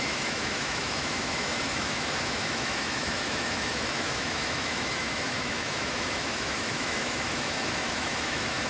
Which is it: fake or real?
fake